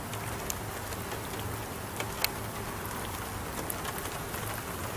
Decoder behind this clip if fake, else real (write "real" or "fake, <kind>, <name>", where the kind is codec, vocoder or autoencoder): real